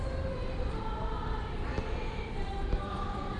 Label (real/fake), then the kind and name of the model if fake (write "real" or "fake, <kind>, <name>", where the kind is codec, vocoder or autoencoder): real